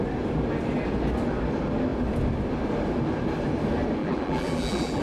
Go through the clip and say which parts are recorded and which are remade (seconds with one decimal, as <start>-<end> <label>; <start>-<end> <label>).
0.0-4.0 recorded; 4.0-5.0 remade